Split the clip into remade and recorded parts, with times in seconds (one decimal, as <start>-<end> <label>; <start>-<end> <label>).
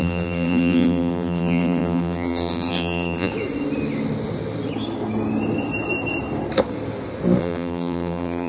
0.0-3.3 remade; 3.3-7.4 recorded; 7.4-8.5 remade